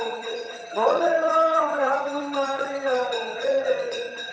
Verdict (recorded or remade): remade